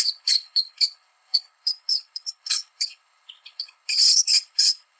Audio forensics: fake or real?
fake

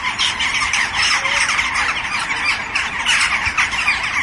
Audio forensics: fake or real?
real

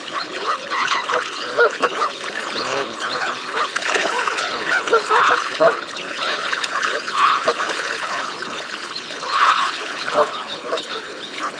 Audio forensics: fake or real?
fake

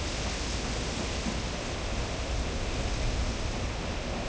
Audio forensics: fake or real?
real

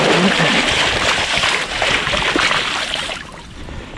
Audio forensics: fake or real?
real